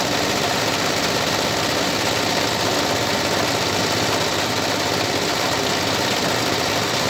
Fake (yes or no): no